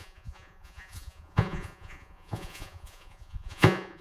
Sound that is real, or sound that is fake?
fake